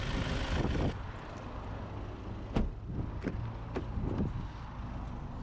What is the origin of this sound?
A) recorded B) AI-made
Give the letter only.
A